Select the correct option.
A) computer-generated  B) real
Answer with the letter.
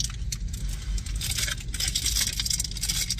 B